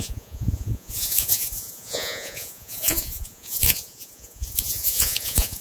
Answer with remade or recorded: remade